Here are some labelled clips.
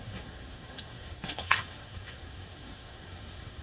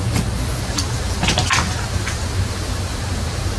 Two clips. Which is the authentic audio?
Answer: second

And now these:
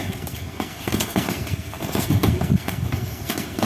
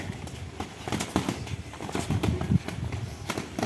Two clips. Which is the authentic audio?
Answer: second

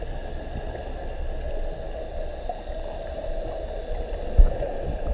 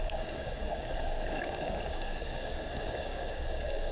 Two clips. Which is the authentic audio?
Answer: first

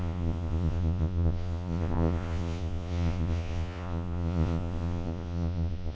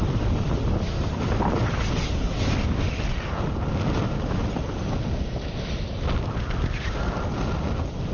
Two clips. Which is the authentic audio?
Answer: second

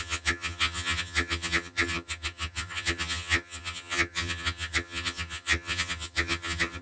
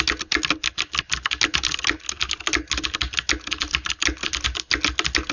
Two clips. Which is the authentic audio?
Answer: second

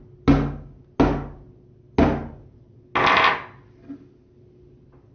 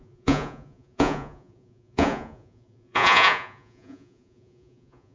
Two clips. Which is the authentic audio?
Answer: first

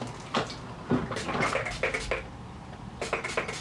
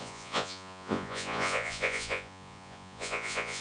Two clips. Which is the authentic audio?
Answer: first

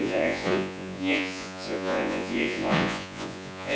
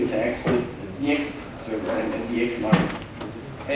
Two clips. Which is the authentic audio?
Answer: second